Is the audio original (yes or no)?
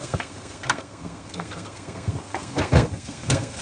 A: no